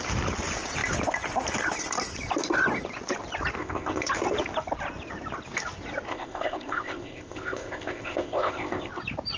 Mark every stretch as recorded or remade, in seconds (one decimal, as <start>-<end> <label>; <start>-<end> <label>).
0.0-3.6 recorded; 3.6-4.1 remade; 4.1-6.1 recorded; 6.1-8.9 remade; 8.9-9.4 recorded